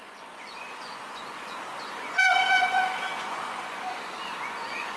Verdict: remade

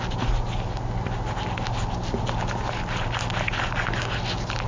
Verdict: recorded